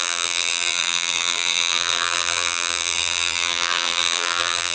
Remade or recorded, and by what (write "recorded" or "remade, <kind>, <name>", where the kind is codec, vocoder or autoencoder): remade, vocoder, BigVGAN v2